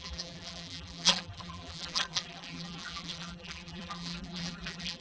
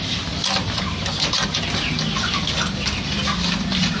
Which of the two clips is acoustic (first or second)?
second